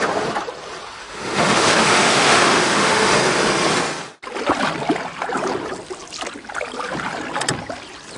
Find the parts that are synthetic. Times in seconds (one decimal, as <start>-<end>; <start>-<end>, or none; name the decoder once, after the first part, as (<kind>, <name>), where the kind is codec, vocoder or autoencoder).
1.0-3.1 (autoencoder, DAC-VAE)